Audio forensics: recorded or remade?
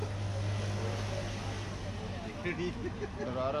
recorded